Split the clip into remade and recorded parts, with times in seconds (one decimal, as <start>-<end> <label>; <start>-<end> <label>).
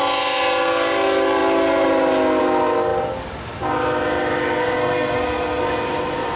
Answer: 0.0-4.6 recorded; 4.6-5.6 remade; 5.6-6.4 recorded